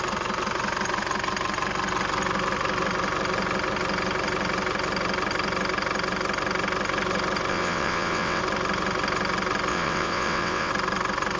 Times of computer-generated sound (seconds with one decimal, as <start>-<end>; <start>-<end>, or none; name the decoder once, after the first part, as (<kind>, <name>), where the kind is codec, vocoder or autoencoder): 7.5-8.4 (vocoder, WaveNeXt); 9.7-10.7